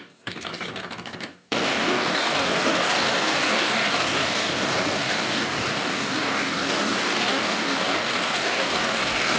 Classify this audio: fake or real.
fake